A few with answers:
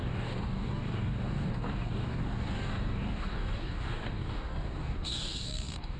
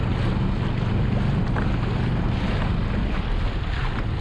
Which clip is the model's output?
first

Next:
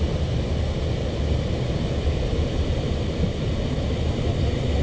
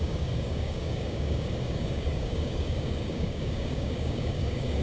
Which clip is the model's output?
second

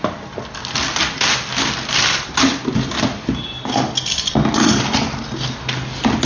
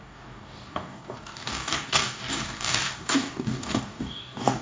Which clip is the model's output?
second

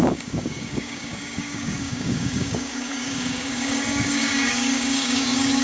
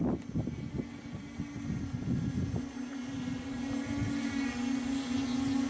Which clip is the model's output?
first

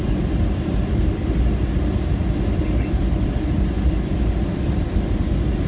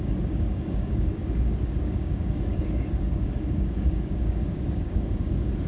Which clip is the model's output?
second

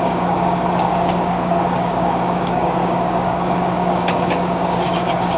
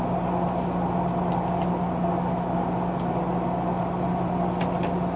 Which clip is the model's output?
first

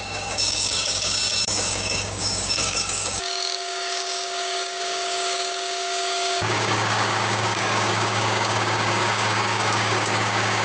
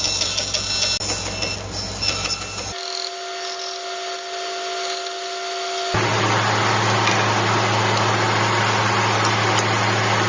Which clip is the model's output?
first